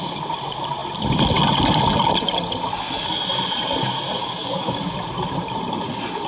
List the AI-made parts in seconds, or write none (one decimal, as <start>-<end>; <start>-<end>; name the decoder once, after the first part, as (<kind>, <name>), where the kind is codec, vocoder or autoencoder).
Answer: 4.2-4.8 (codec, DAC)